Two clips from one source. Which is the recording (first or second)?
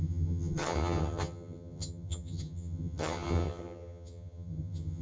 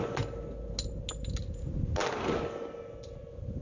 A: second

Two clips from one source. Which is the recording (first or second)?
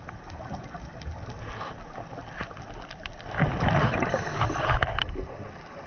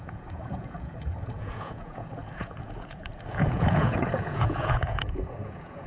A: first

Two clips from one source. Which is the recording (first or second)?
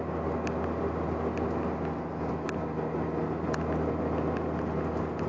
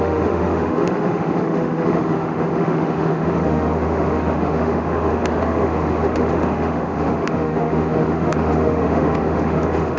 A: first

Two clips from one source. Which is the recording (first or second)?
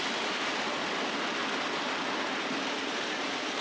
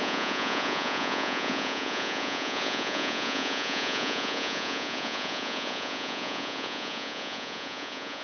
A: first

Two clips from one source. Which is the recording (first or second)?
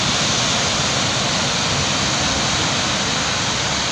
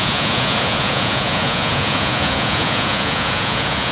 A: first